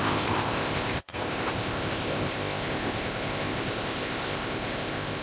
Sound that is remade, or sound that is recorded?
remade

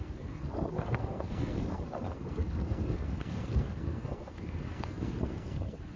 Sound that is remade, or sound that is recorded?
remade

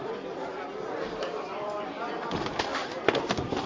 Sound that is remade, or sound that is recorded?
recorded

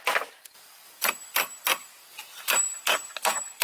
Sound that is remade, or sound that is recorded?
remade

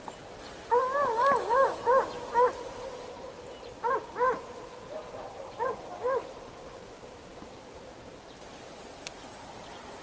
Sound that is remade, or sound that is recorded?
recorded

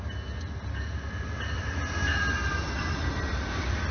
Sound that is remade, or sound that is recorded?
recorded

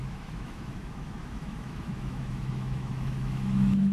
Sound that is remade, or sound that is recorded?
remade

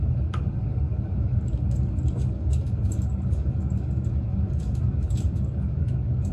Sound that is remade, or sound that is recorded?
remade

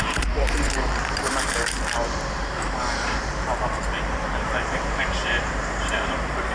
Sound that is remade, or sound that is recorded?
remade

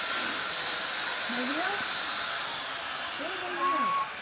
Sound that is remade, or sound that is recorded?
remade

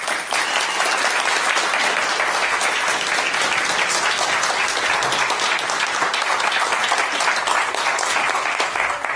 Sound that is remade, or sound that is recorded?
recorded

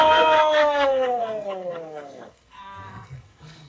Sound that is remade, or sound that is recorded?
remade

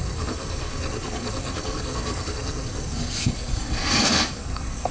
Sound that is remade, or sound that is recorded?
remade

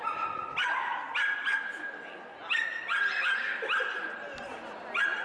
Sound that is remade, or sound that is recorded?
recorded